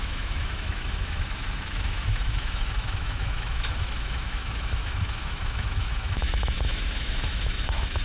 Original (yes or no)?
no